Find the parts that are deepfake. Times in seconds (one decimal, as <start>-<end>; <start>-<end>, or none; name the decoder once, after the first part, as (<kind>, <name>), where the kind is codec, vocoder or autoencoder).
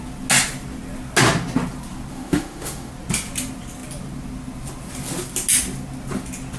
2.1-2.9 (autoencoder, DAC-VAE)